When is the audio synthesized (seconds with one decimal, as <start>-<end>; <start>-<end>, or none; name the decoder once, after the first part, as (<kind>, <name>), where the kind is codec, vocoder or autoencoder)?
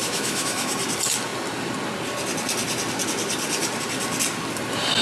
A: 0.0-0.7 (autoencoder, DAC-VAE)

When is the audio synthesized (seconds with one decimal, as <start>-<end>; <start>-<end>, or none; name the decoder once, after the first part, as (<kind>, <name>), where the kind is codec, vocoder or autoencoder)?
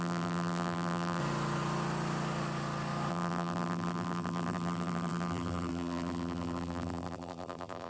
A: 0.0-1.2 (vocoder, BigVGAN v2); 3.1-7.9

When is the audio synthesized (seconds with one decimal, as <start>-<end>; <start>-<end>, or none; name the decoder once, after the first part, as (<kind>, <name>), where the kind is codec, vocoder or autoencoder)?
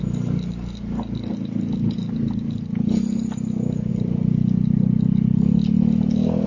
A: none